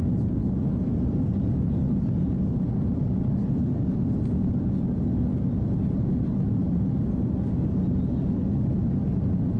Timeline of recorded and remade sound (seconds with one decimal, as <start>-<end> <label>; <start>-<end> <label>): 0.0-9.6 recorded